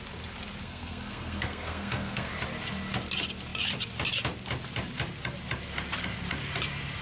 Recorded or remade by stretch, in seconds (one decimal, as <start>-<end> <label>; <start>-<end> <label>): 0.0-0.6 recorded; 0.6-2.3 remade; 2.3-7.0 recorded